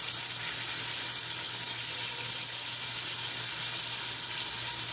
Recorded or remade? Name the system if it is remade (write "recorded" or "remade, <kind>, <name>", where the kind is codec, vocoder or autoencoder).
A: recorded